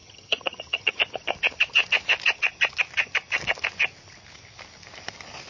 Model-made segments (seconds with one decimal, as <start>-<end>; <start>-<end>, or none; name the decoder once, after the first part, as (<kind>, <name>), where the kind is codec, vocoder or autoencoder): 0.0-1.0 (vocoder, HiFi-GAN)